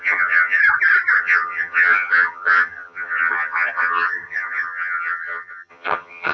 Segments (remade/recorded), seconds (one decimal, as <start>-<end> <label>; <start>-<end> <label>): 0.0-0.6 remade; 0.6-1.2 recorded; 1.2-6.3 remade